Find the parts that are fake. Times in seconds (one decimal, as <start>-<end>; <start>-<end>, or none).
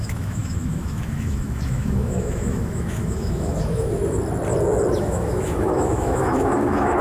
0.0-4.0; 5.0-7.0